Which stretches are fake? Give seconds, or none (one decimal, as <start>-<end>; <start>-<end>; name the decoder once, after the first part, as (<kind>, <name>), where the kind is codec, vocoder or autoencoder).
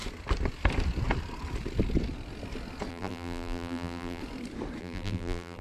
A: 2.9-4.2 (vocoder, BigVGAN v2); 4.8-5.6